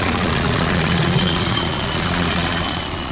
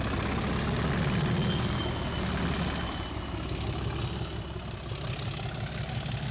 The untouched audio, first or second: second